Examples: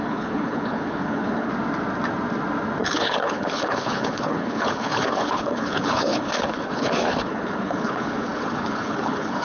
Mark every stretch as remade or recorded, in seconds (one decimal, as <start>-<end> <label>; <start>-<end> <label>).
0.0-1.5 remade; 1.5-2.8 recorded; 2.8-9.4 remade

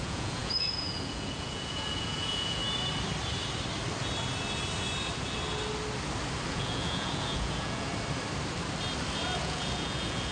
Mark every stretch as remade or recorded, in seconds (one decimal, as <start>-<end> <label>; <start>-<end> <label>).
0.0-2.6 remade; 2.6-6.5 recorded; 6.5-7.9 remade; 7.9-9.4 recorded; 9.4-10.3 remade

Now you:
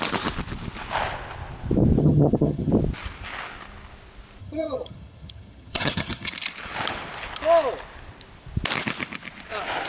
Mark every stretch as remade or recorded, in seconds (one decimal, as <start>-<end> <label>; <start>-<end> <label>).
0.0-2.0 recorded; 2.0-2.7 remade; 2.7-4.4 recorded; 4.4-6.3 remade; 6.3-9.9 recorded

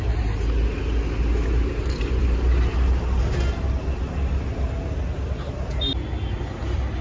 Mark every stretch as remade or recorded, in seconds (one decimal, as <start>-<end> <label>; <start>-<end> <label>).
0.0-7.0 recorded

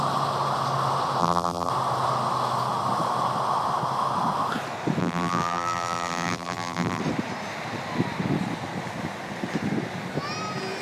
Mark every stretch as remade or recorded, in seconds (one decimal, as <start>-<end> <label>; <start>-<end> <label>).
0.0-1.2 recorded; 1.2-1.7 remade; 1.7-5.0 recorded; 5.0-7.0 remade; 7.0-10.8 recorded

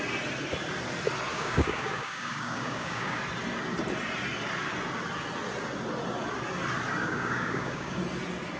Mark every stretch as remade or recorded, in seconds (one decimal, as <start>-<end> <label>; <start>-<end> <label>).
0.0-1.3 recorded; 1.3-3.2 remade; 3.2-7.0 recorded; 7.0-8.0 remade; 8.0-8.6 recorded

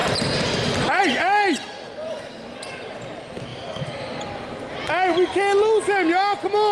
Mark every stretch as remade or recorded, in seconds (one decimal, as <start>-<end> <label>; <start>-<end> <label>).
0.0-1.0 remade; 1.0-3.5 recorded; 3.5-4.5 remade; 4.5-6.7 recorded